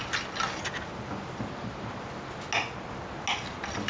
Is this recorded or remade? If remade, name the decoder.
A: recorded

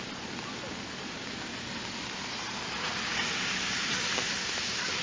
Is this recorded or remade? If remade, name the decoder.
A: recorded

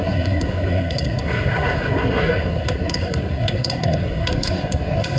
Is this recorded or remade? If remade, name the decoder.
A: remade, codec, SNAC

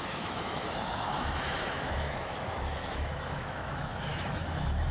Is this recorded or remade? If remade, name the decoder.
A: remade, autoencoder, DAC-VAE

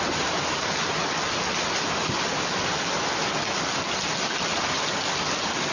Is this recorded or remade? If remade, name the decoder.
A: recorded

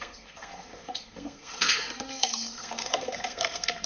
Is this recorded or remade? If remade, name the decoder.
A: remade, codec, SNAC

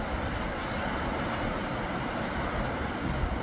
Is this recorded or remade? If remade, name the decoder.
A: recorded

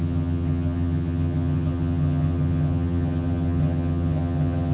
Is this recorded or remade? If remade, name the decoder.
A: remade, vocoder, HiFi-GAN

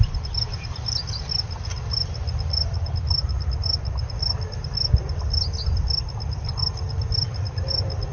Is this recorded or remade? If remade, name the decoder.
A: recorded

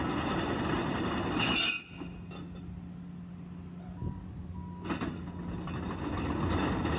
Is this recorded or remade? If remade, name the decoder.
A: recorded